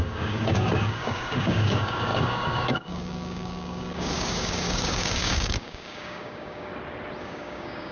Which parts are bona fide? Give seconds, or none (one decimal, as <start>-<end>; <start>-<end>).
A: 6.7-7.2